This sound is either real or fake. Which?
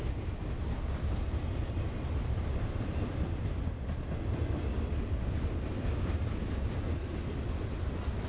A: real